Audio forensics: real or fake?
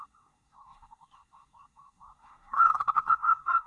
fake